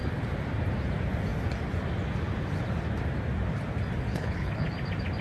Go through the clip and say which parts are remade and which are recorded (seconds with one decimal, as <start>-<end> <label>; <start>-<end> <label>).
0.0-4.1 recorded; 4.1-4.7 remade; 4.7-5.2 recorded